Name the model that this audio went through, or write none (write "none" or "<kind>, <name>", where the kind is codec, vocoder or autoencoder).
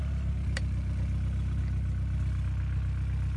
none